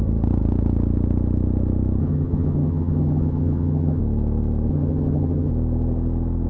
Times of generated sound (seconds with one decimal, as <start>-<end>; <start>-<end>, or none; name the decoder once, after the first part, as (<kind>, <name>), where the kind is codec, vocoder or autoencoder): 2.0-4.0 (vocoder, HiFi-GAN); 4.7-5.5